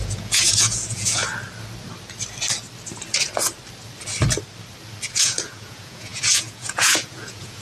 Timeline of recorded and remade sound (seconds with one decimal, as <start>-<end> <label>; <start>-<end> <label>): 0.0-1.2 remade; 1.2-5.1 recorded; 5.1-7.6 remade